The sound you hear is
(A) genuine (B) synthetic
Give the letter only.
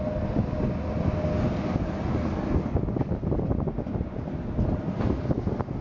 A